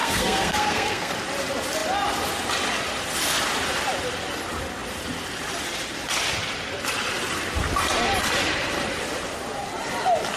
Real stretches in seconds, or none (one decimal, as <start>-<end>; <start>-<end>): 1.1-10.4